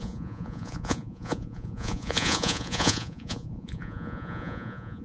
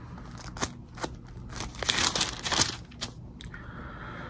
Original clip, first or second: second